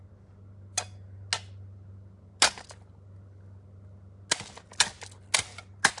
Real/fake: real